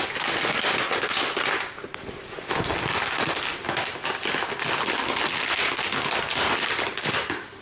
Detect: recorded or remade recorded